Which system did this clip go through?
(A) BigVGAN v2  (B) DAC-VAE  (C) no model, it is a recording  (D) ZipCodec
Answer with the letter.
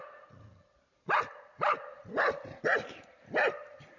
C